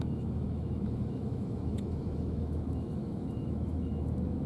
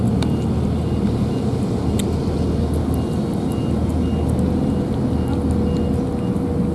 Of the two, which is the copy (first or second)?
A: first